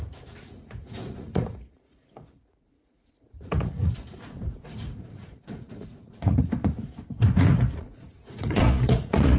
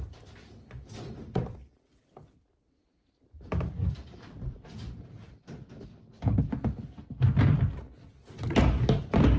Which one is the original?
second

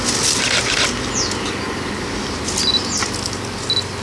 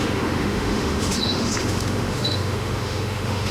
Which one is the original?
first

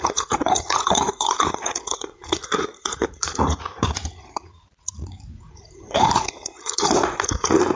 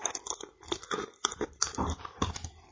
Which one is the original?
second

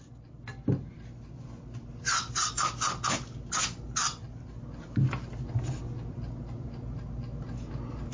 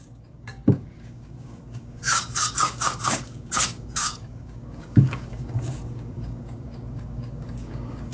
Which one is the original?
first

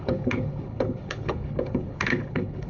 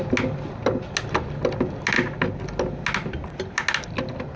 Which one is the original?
second